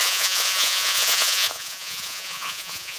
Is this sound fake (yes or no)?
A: yes